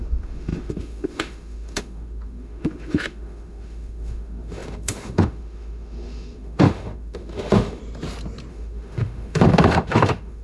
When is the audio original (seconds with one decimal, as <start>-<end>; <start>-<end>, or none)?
7.8-8.5